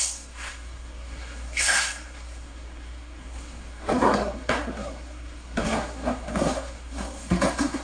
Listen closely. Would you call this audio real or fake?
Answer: fake